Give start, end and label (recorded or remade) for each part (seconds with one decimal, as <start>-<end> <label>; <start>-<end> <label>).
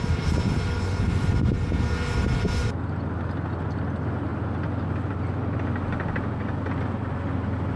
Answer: 0.0-7.8 recorded